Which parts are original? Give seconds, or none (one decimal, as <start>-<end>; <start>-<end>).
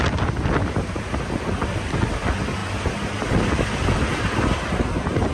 0.0-5.3